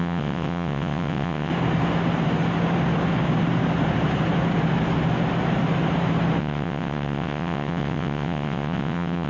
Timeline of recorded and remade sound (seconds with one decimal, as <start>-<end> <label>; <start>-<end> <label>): 0.0-1.5 remade; 1.5-6.4 recorded; 6.4-9.3 remade